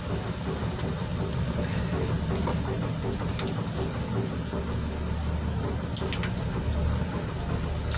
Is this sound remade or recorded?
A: recorded